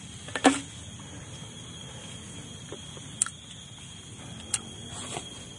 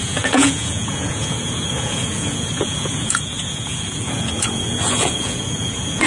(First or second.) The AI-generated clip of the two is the second